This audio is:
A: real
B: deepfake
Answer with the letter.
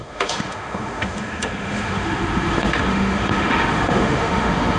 B